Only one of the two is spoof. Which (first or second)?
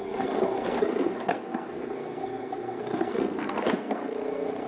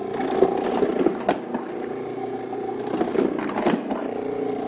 first